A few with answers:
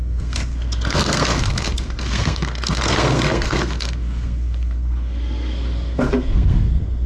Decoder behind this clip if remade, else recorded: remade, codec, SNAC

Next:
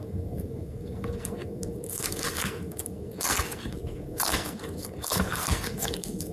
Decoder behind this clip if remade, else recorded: remade, codec, SNAC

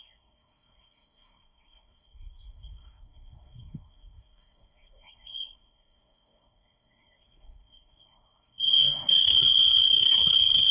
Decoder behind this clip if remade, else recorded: remade, codec, SNAC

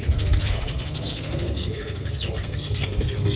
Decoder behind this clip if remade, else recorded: remade, codec, SNAC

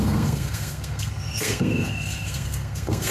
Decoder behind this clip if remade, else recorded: remade, codec, SNAC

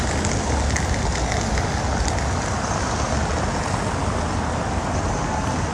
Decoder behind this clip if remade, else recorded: recorded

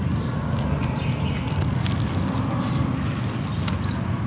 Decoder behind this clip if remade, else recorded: recorded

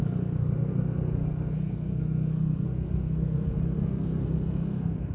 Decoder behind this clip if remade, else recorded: remade, codec, SNAC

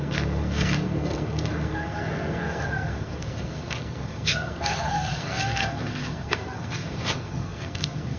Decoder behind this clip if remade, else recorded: remade, codec, SNAC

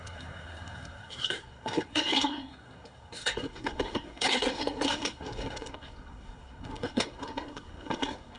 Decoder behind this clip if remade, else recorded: remade, codec, SNAC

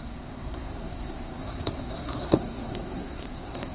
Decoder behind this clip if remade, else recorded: remade, codec, SNAC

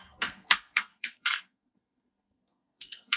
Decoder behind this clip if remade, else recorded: remade, codec, SNAC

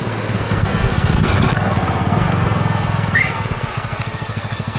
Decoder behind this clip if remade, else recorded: remade, codec, SNAC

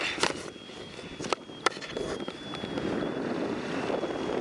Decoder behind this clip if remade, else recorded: recorded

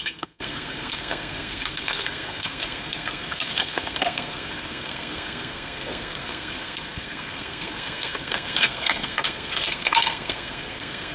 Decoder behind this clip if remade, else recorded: remade, codec, SNAC